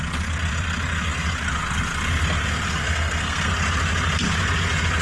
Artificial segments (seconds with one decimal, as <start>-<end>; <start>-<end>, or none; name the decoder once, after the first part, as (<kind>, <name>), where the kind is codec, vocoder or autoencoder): 2.8-3.5 (codec, SNAC)